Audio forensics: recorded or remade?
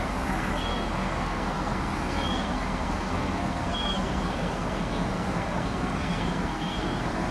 remade